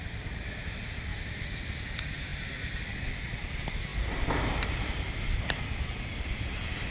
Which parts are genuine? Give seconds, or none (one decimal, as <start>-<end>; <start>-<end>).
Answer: 0.0-1.1; 1.6-6.9